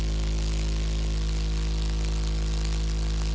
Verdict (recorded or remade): recorded